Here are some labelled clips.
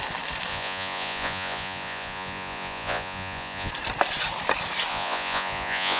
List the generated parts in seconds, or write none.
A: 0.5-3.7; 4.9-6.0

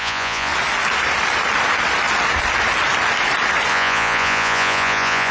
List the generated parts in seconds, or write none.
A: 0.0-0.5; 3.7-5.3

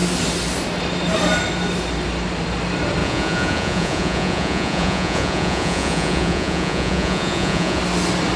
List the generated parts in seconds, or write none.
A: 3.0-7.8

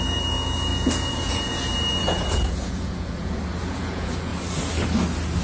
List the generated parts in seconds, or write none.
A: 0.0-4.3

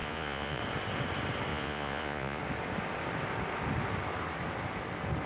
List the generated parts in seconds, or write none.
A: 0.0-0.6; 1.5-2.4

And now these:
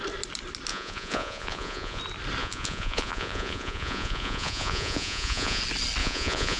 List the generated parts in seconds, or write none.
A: 0.7-2.0; 2.4-5.6; 6.0-6.6

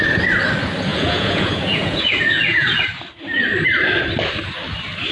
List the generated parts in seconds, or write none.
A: 0.9-2.8